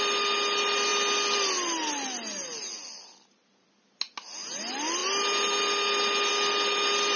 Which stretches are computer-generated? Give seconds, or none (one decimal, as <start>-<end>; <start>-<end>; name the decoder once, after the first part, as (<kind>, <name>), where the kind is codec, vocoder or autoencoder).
none